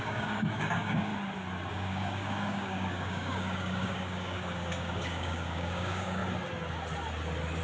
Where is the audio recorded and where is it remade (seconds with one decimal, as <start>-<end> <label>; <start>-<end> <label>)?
0.0-1.1 remade; 1.1-1.7 recorded; 1.7-6.2 remade; 6.2-7.6 recorded